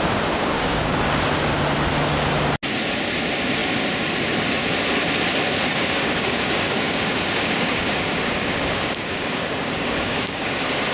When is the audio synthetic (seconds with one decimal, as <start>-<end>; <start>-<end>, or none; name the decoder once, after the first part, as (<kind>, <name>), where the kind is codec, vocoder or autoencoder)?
0.5-1.1 (codec, DAC); 5.7-10.5

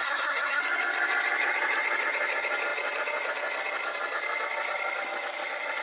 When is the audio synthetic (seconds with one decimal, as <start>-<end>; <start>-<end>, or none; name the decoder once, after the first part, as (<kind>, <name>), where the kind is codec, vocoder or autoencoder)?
0.0-0.6 (codec, SNAC)

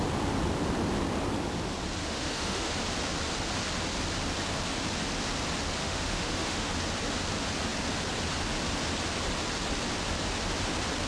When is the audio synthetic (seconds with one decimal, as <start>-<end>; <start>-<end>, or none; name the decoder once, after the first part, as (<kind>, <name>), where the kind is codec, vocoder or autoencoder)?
2.0-2.7 (autoencoder, DAC-VAE); 5.8-6.7

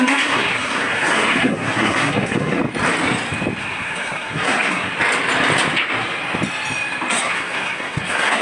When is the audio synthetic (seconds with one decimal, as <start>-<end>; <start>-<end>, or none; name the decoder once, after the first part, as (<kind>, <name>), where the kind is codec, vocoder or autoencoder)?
0.0-2.6 (codec, SNAC); 3.6-4.9; 7.1-8.4

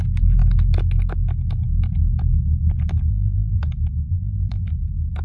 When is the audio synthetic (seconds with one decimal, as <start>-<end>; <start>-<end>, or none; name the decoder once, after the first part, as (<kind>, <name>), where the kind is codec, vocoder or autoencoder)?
3.1-3.6 (vocoder, BigVGAN v2); 4.1-4.7

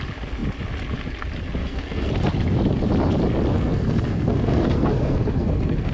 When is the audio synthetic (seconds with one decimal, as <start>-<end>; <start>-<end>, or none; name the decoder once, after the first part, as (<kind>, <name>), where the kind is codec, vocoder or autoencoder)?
1.6-2.1 (codec, SNAC); 3.5-5.9